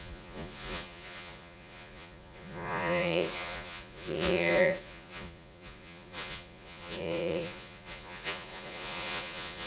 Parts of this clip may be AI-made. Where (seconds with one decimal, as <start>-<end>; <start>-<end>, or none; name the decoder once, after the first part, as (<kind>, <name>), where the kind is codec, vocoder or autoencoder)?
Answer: 0.0-9.7 (vocoder, Vocos)